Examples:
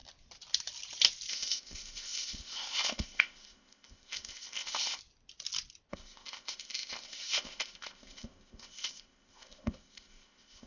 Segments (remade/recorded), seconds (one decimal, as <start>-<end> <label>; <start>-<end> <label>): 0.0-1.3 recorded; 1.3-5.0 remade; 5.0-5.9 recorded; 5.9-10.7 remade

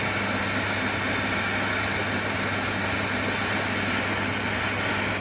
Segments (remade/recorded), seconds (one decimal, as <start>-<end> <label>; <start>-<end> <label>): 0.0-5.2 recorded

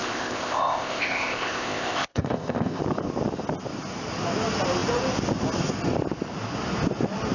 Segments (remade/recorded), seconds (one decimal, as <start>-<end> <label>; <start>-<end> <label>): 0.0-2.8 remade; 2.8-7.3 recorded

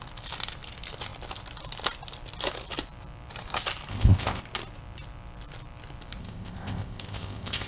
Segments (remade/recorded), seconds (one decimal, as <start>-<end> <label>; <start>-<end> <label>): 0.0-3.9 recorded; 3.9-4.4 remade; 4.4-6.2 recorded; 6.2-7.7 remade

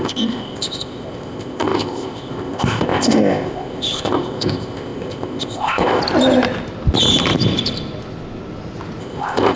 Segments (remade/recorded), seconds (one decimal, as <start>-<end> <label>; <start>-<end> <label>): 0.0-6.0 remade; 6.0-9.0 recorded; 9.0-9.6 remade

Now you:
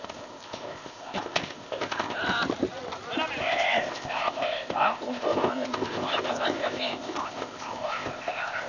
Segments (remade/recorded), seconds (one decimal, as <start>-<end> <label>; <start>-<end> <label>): 0.0-2.2 remade; 2.2-3.4 recorded; 3.4-8.7 remade